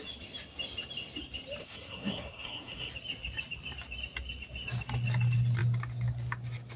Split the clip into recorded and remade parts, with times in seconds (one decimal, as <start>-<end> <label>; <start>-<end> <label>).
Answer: 0.0-1.6 recorded; 1.6-2.9 remade; 2.9-6.8 recorded